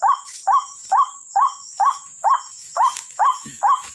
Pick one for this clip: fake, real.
fake